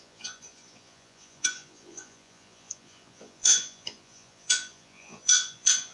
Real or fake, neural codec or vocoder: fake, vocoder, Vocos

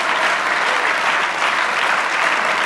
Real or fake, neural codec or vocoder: real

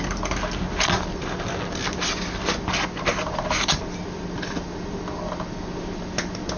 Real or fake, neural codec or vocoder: real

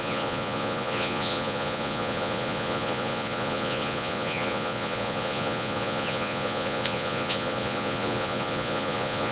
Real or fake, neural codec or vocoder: fake, vocoder, Vocos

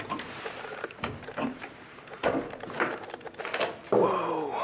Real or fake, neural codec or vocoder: real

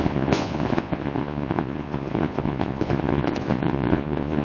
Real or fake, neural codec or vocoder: fake, vocoder, Vocos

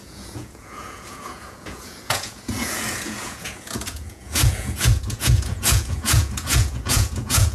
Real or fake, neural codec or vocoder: fake, vocoder, Vocos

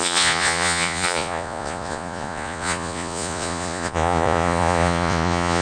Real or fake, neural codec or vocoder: fake, vocoder, Vocos